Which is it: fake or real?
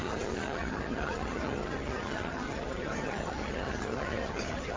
fake